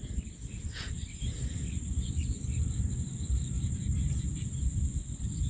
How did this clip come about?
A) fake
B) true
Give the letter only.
B